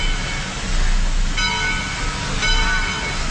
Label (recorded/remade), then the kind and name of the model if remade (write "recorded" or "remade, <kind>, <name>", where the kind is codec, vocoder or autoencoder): recorded